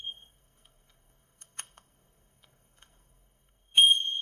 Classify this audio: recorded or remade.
remade